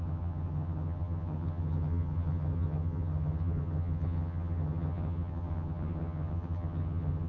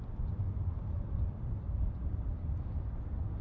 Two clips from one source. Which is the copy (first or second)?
first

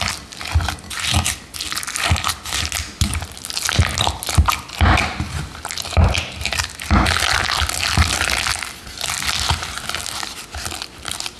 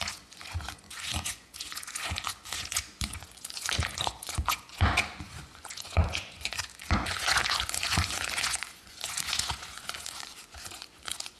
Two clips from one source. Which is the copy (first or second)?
second